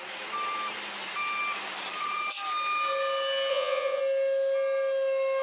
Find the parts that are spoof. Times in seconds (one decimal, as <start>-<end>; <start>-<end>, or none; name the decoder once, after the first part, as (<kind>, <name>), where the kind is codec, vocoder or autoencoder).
3.5-4.0 (vocoder, Vocos)